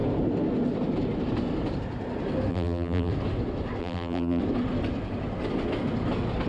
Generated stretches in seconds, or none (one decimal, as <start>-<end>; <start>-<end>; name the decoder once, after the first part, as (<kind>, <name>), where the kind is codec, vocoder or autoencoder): 2.5-3.1 (vocoder, BigVGAN v2); 3.8-4.4